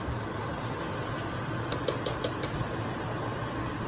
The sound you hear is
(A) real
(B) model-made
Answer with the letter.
A